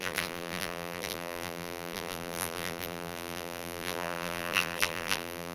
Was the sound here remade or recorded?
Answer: remade